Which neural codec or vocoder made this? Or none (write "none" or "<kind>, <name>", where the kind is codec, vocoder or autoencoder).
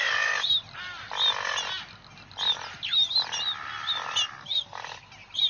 none